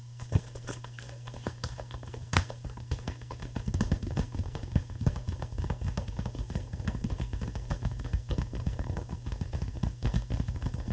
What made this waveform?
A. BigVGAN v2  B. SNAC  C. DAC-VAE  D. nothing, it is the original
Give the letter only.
B